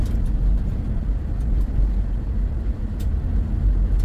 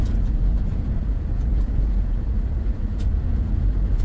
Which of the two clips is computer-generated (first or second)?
second